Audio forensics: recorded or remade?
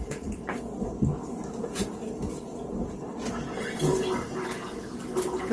recorded